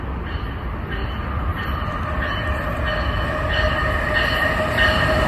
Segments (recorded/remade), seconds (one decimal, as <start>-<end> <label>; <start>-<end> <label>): 0.0-5.3 recorded